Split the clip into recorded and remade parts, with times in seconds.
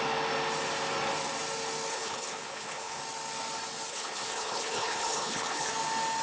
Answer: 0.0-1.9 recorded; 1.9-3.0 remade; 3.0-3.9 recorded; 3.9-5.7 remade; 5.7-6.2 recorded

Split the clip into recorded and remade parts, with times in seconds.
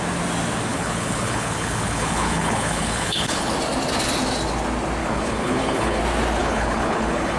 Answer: 0.0-0.7 recorded; 0.7-3.5 remade; 3.5-5.0 recorded; 5.0-6.0 remade; 6.0-6.4 recorded; 6.4-7.4 remade